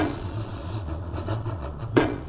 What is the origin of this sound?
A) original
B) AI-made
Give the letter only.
B